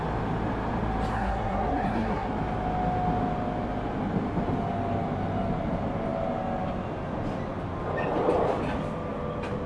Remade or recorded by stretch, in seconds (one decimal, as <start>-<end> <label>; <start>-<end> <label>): 0.0-1.1 recorded; 1.1-2.3 remade; 2.3-9.7 recorded